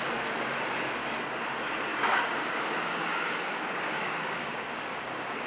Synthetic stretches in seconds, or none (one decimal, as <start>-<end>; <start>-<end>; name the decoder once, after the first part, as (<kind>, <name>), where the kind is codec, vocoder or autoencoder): 1.9-5.5 (codec, DAC)

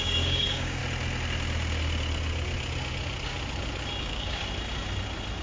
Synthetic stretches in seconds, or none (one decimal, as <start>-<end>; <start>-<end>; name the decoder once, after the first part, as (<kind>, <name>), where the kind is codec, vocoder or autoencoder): 0.0-0.8 (codec, DAC); 4.0-4.4

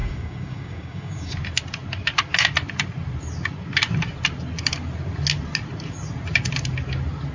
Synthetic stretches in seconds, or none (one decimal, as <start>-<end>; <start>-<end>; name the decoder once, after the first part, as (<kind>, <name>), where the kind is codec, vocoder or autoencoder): 0.0-1.3 (codec, DAC)

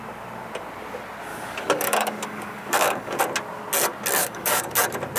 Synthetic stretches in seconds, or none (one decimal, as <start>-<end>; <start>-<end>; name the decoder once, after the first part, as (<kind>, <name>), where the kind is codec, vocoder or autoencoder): 1.3-3.2 (codec, DAC); 4.2-4.7

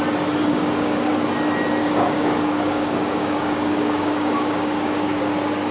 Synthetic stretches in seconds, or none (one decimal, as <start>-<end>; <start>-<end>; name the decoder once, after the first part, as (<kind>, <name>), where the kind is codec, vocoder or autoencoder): 0.5-1.1 (codec, DAC); 1.8-5.2

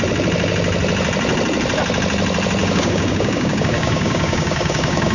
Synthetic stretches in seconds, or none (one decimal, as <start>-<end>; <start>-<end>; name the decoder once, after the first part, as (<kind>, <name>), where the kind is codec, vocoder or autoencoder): 2.6-5.1 (codec, DAC)

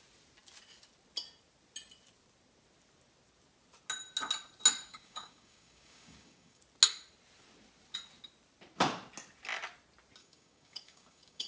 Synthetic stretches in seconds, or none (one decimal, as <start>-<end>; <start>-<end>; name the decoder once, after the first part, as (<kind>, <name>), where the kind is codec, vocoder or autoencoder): 4.9-6.6 (codec, DAC); 10.2-11.5